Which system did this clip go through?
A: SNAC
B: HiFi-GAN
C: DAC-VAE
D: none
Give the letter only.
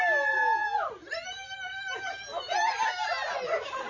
D